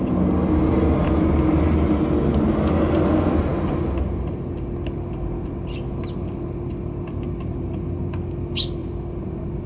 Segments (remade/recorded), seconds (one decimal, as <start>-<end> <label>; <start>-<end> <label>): 0.0-8.8 recorded; 8.8-9.7 remade